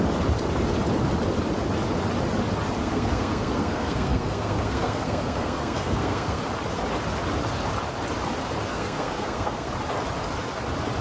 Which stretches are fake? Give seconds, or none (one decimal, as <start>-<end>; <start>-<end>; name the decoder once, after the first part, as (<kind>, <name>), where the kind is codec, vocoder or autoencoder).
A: 2.8-6.4 (codec, SNAC); 8.7-9.7